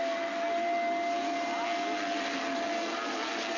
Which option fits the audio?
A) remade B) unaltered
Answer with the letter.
B